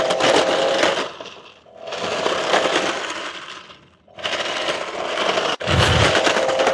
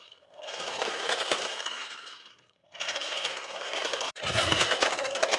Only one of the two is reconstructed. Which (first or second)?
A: second